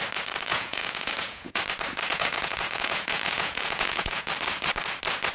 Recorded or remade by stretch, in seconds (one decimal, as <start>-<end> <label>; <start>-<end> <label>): 0.0-0.5 recorded; 0.5-1.6 remade; 1.6-2.1 recorded; 2.1-4.3 remade; 4.3-5.3 recorded